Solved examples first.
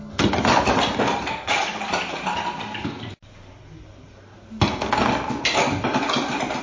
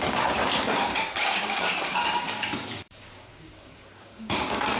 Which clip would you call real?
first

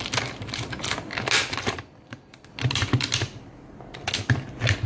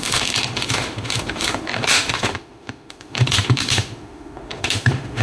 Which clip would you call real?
first